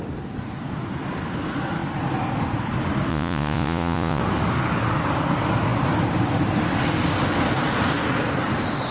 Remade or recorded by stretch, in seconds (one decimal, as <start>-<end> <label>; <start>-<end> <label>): 0.0-3.1 recorded; 3.1-4.2 remade; 4.2-8.9 recorded